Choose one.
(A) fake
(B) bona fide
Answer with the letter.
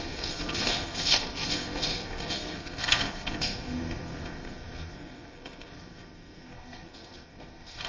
A